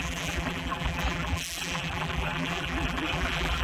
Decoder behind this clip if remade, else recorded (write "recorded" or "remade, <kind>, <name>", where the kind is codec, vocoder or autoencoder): remade, vocoder, BigVGAN v2